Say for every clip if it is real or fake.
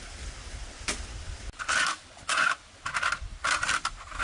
real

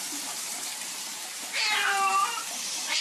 fake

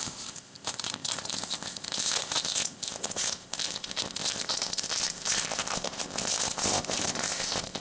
fake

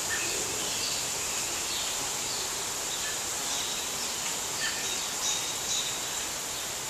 real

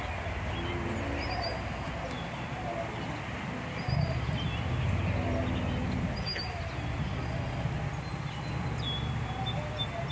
real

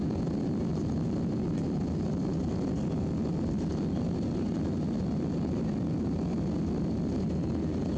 real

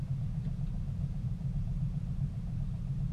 fake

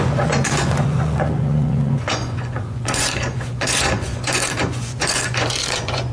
fake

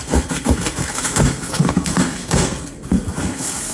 fake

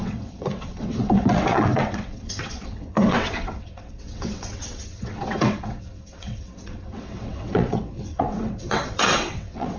fake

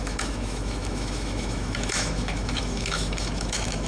fake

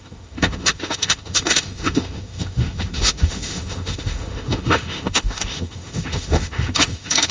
fake